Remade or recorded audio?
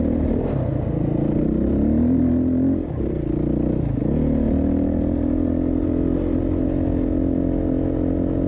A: recorded